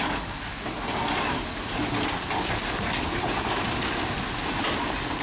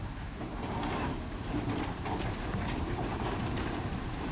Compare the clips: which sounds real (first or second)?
first